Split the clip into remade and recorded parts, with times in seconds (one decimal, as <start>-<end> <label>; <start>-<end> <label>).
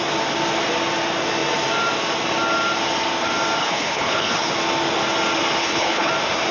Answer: 0.0-3.6 recorded; 3.6-4.5 remade; 4.5-5.6 recorded; 5.6-6.1 remade; 6.1-6.5 recorded